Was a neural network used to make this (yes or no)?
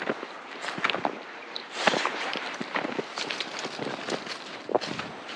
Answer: yes